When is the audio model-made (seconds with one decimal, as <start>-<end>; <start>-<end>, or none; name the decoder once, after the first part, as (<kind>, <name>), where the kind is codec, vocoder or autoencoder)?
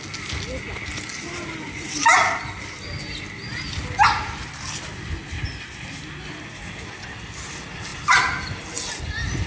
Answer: none